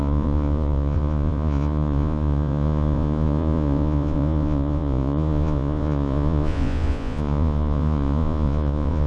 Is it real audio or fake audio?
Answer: fake